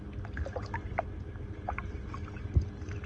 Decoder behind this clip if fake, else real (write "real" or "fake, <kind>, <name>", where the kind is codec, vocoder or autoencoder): real